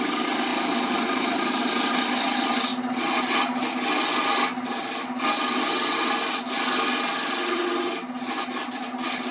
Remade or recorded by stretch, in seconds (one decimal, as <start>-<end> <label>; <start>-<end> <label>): 0.0-0.5 recorded; 0.5-1.6 remade; 1.6-9.3 recorded